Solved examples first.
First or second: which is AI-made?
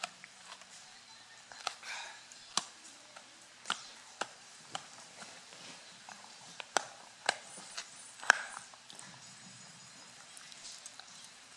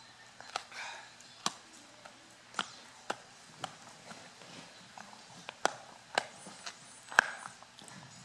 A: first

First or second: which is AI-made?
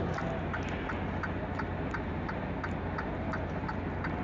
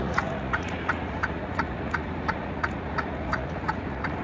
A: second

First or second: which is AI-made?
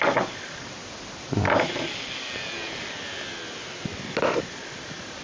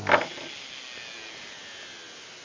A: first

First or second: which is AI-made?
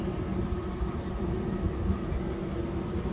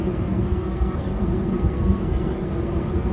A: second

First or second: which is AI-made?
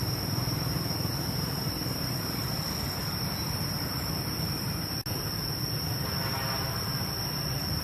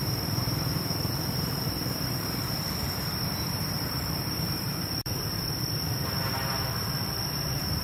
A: second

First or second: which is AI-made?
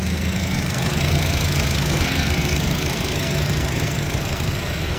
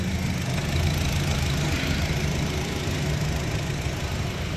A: first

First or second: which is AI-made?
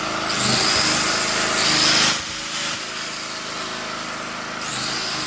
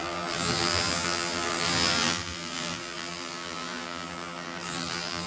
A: second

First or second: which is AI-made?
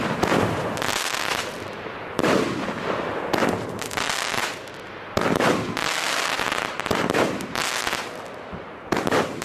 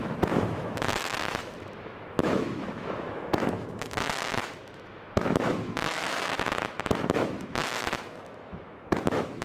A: second